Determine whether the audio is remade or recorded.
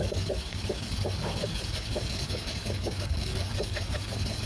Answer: remade